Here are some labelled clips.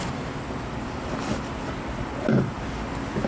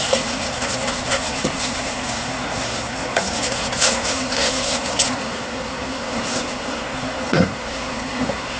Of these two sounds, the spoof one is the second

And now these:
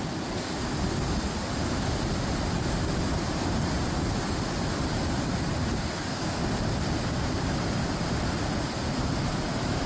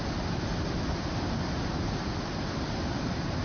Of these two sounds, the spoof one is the first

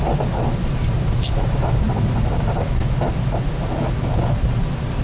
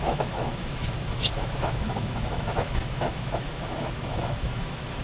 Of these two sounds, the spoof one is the second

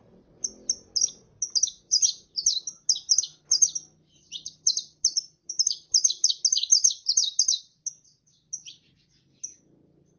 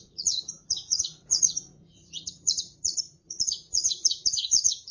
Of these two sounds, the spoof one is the second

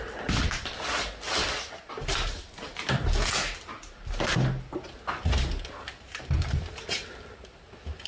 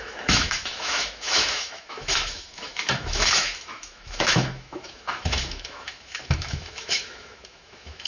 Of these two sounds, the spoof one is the second